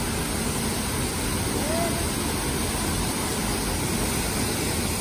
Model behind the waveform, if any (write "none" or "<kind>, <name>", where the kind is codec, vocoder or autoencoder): none